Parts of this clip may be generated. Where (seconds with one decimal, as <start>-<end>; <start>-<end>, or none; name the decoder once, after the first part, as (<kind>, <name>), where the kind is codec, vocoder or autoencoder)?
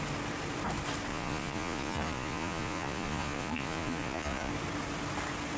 1.1-4.5 (vocoder, Vocos)